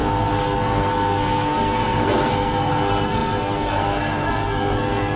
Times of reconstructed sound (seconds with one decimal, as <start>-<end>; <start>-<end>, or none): 0.0-5.2